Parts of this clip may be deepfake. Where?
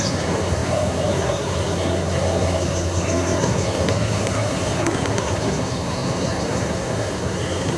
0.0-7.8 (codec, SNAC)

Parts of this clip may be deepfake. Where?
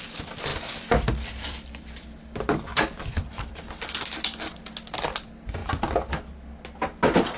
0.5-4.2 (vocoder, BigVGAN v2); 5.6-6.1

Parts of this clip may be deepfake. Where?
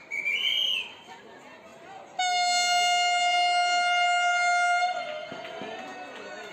0.0-1.7 (vocoder, BigVGAN v2); 4.8-5.9